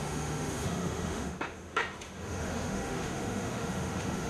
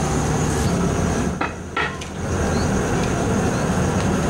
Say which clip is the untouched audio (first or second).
second